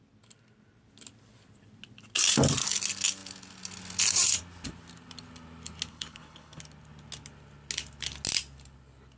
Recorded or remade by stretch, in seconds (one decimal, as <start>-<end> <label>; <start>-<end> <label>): 0.0-5.9 recorded; 5.9-6.6 remade; 6.6-9.2 recorded